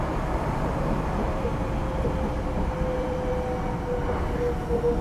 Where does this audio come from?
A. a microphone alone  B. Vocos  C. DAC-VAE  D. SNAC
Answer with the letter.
A